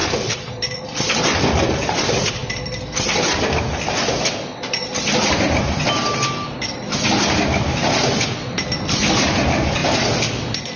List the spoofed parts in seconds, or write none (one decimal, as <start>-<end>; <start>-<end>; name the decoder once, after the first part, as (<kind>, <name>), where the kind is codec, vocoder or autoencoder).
none